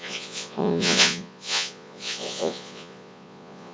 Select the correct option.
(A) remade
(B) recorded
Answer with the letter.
A